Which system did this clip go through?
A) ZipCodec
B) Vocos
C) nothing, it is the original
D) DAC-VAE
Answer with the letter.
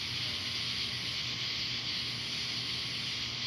C